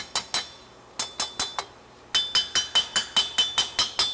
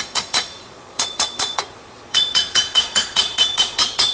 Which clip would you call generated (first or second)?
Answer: second